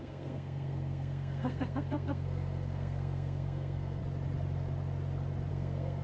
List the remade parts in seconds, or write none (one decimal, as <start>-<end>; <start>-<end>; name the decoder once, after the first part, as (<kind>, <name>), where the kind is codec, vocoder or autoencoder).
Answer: 0.0-4.0 (codec, SNAC); 5.5-6.0